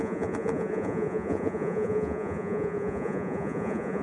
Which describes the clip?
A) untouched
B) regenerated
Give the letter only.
B